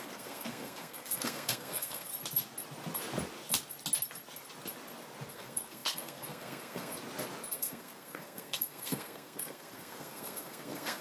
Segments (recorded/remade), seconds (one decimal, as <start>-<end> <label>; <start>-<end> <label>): 0.0-2.1 remade; 2.1-5.3 recorded; 5.3-7.0 remade; 7.0-7.5 recorded; 7.5-11.0 remade